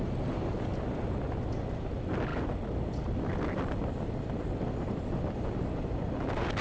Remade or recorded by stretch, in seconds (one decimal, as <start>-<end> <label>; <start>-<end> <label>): 0.0-6.6 recorded